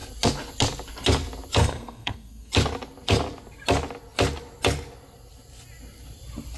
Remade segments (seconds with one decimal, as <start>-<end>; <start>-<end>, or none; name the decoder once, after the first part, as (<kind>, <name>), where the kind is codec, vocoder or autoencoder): 1.6-2.5 (codec, SNAC)